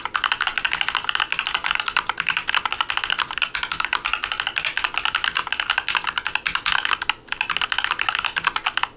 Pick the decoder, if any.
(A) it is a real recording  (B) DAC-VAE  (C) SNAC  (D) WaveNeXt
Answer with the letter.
A